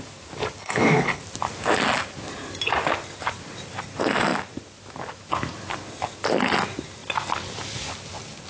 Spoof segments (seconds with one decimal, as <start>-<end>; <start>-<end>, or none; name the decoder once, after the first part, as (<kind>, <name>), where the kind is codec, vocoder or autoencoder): 0.6-1.2 (codec, HILCodec)